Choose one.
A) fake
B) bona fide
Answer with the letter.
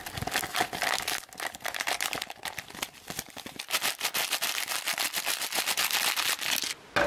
B